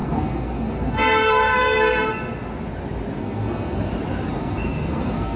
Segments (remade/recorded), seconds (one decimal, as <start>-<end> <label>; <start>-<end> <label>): 0.0-2.1 remade; 2.1-3.2 recorded; 3.2-3.9 remade; 3.9-4.4 recorded; 4.4-5.4 remade